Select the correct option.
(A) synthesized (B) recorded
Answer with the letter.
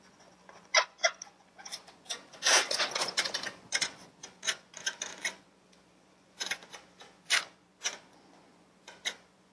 A